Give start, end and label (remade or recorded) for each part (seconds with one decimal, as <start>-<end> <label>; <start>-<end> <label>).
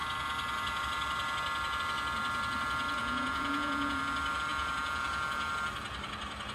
0.0-3.0 recorded; 3.0-4.0 remade; 4.0-4.5 recorded; 4.5-5.5 remade; 5.5-6.5 recorded